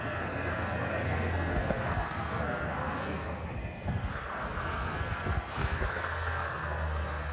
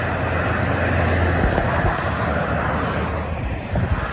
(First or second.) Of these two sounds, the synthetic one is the first